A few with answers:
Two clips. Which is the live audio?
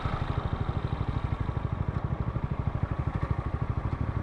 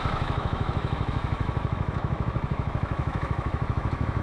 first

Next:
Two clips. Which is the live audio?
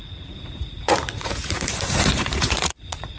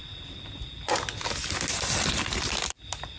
second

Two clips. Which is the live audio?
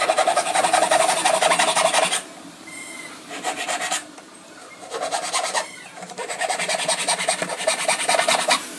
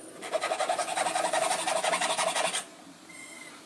second